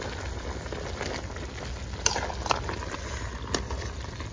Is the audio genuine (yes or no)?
yes